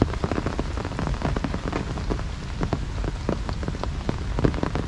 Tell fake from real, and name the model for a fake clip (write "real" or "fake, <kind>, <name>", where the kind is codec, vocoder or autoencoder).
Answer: real